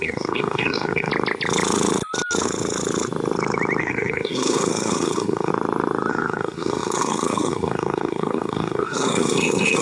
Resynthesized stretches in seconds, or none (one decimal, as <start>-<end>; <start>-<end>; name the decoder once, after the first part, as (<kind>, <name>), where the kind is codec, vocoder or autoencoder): 0.0-1.1 (codec, SNAC); 3.8-5.5; 6.1-9.8